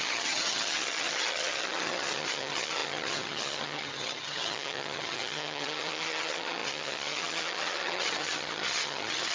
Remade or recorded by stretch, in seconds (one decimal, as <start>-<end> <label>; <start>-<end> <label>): 0.0-9.3 remade

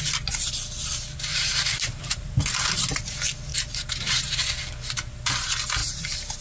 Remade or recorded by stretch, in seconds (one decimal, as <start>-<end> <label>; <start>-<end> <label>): 0.0-1.3 recorded; 1.3-3.0 remade; 3.0-3.5 recorded; 3.5-4.2 remade; 4.2-5.8 recorded; 5.8-6.4 remade

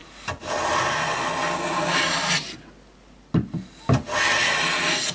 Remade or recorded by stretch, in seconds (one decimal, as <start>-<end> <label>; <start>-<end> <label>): 0.0-5.1 recorded

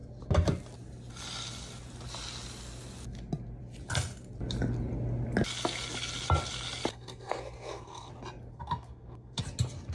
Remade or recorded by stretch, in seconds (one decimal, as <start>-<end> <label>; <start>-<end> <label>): 0.0-6.9 recorded; 6.9-8.1 remade; 8.1-8.5 recorded; 8.5-9.4 remade; 9.4-9.9 recorded

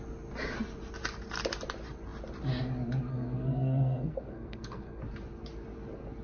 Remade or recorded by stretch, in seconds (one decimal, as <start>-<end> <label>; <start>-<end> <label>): 0.0-3.1 recorded; 3.1-5.0 remade; 5.0-6.2 recorded

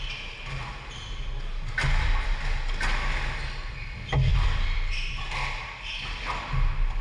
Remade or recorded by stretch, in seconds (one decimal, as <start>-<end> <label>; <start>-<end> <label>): 0.0-7.0 recorded

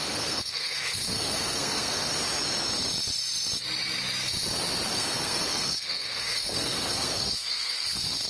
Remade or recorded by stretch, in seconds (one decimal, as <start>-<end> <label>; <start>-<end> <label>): 0.0-2.1 remade; 2.1-4.9 recorded; 4.9-8.3 remade

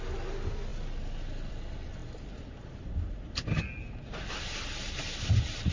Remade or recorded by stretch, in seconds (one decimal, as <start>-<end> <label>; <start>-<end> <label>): 0.0-5.7 recorded